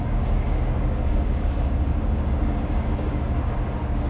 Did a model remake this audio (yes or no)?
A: yes